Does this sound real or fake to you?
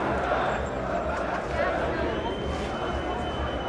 real